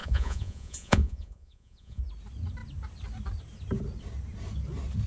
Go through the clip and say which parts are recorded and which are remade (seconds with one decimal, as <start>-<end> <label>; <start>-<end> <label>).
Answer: 0.0-2.0 remade; 2.0-5.1 recorded